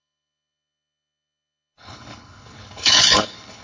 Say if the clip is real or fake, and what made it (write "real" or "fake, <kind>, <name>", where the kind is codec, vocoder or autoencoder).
fake, codec, HILCodec